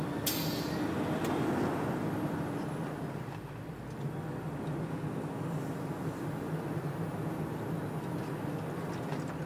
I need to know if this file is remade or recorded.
recorded